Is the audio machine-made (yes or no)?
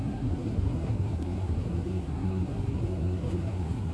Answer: yes